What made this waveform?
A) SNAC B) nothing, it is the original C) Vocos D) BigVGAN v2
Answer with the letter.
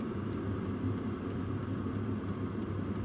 B